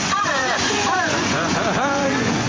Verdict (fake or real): fake